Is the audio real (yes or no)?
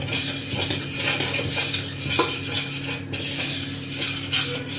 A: yes